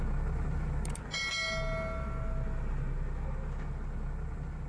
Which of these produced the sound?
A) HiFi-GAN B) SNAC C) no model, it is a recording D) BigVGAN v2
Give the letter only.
C